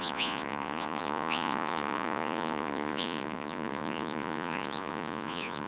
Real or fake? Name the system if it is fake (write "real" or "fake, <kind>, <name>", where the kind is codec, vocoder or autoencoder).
fake, vocoder, Vocos